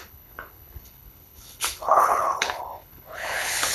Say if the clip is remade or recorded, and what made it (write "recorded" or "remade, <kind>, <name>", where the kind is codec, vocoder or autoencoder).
remade, codec, HILCodec